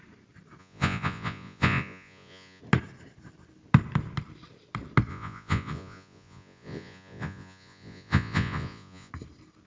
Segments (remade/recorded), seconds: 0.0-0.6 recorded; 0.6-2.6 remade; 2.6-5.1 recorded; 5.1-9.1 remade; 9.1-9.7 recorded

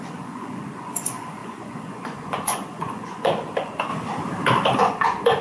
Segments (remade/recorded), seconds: 0.0-3.9 remade; 3.9-4.8 recorded; 4.8-5.4 remade

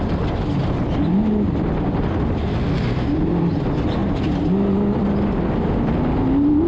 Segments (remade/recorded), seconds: 0.0-6.7 recorded

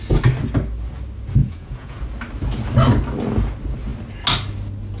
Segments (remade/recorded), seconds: 0.0-1.4 recorded; 1.4-2.0 remade; 2.0-5.0 recorded

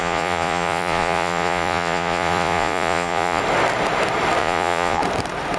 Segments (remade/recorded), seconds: 0.0-3.4 remade; 3.4-4.4 recorded; 4.4-5.0 remade; 5.0-5.6 recorded

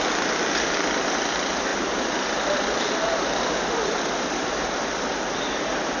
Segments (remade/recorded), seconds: 0.0-6.0 recorded

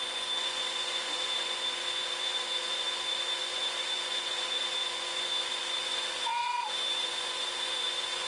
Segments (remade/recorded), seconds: 0.0-8.3 remade